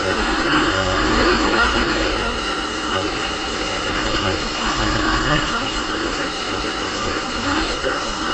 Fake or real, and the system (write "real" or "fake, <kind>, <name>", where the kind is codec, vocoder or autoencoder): fake, codec, SNAC